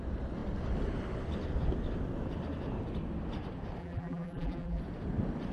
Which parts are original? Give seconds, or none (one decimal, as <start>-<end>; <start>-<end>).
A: 0.0-3.8; 4.8-5.5